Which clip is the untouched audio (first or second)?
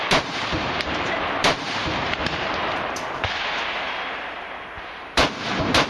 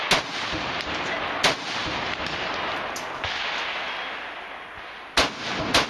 second